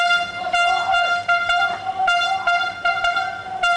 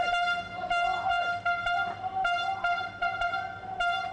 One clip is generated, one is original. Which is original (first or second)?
second